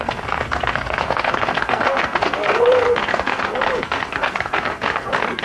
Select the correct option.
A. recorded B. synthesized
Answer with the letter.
B